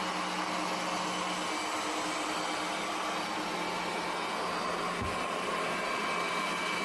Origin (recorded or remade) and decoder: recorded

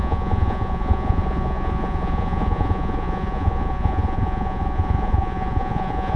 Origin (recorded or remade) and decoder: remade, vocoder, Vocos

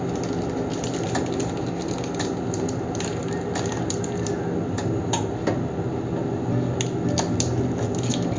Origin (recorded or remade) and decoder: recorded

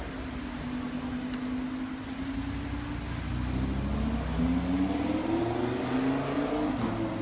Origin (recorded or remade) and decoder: recorded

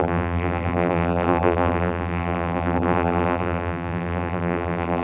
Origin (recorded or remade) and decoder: remade, vocoder, BigVGAN v2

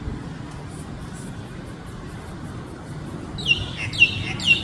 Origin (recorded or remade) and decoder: recorded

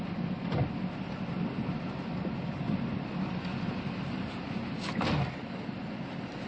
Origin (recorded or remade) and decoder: recorded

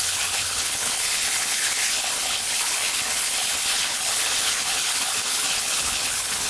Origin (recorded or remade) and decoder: remade, codec, HILCodec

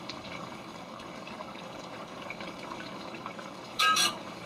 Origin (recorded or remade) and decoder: remade, codec, DAC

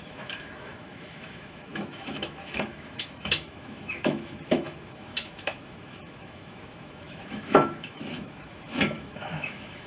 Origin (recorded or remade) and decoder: remade, autoencoder, DAC-VAE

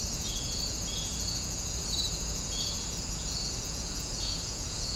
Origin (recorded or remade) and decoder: remade, vocoder, Vocos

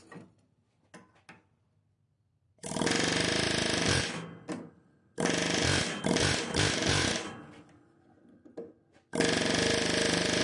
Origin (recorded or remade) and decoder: recorded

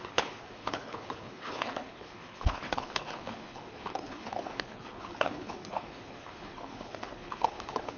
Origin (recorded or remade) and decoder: remade, codec, HILCodec